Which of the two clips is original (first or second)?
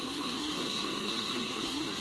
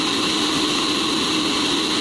second